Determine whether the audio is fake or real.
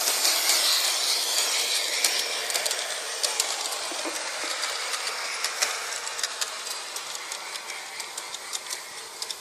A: real